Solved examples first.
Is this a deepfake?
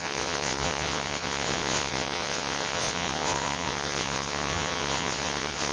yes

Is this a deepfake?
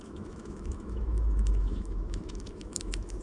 yes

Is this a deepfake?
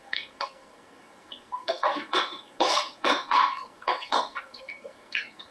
yes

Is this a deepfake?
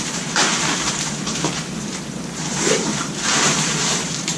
yes